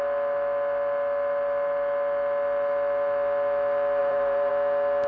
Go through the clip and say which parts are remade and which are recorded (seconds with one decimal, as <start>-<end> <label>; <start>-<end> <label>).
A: 0.0-4.0 recorded; 4.0-4.5 remade; 4.5-5.1 recorded